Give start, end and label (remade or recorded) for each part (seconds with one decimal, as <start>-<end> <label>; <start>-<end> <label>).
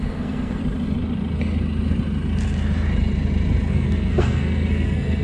0.0-0.6 remade; 0.6-3.7 recorded; 3.7-5.2 remade